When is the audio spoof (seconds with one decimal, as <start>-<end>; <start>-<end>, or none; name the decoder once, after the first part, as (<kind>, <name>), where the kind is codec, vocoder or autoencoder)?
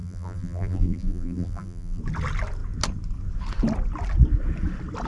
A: 0.0-2.0 (vocoder, BigVGAN v2)